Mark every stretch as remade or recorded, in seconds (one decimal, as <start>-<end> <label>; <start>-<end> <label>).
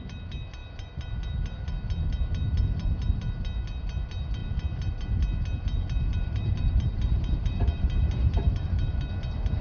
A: 0.0-6.1 recorded; 6.1-8.8 remade; 8.8-9.6 recorded